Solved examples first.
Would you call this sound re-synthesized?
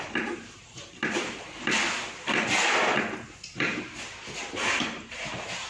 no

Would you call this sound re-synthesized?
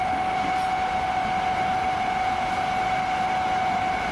no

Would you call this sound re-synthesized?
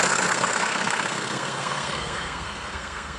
yes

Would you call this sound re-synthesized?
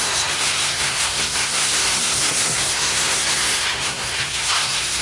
yes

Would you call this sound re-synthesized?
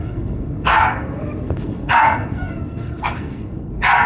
yes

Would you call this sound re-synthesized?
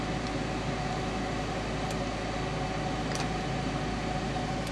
no